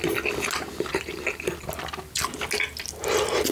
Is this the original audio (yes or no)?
yes